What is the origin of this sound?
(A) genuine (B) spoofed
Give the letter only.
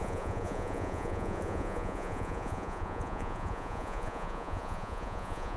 B